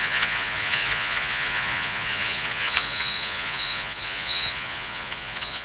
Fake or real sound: fake